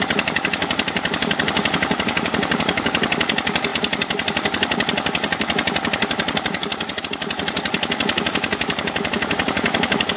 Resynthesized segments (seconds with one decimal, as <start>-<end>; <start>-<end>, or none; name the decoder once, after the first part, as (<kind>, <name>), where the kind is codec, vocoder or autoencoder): none